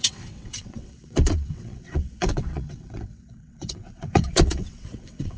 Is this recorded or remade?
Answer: remade